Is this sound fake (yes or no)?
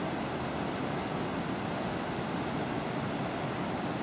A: no